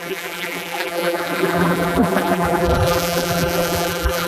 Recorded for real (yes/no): no